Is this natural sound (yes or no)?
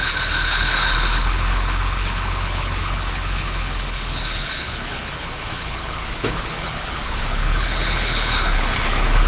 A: no